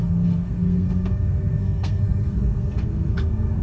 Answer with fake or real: fake